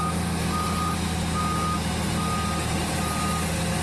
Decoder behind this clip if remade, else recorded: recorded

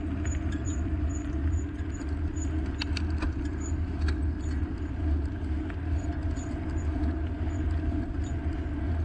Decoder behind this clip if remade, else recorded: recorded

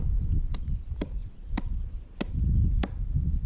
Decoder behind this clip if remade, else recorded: recorded